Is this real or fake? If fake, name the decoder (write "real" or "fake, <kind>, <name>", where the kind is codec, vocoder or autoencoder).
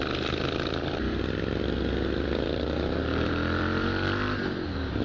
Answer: fake, vocoder, BigVGAN v2